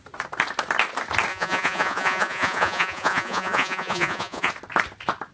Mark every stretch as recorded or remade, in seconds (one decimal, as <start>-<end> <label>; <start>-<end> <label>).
0.0-1.3 recorded; 1.3-4.5 remade; 4.5-5.3 recorded